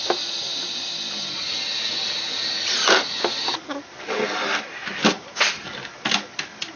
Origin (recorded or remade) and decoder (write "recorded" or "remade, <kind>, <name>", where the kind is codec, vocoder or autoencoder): recorded